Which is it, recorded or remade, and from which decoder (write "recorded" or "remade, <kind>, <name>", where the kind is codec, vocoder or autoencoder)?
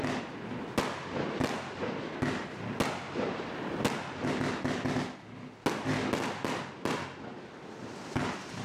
recorded